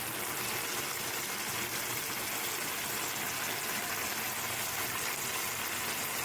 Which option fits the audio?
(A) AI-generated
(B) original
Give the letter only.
B